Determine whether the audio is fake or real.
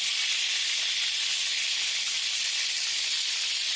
real